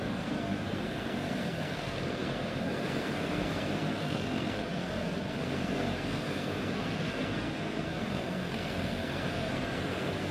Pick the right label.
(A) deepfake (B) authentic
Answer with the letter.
A